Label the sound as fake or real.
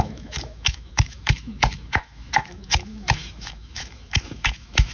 fake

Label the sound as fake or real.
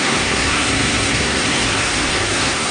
fake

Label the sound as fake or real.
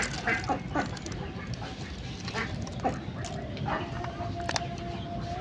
real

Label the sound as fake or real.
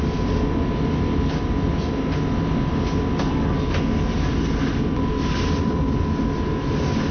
real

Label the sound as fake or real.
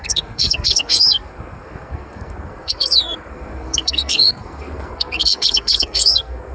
fake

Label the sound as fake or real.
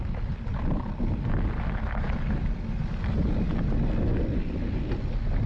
real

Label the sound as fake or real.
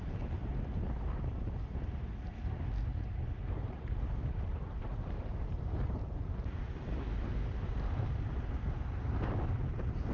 real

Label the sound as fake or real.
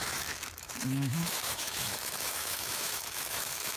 fake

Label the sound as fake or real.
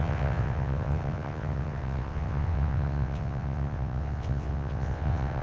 fake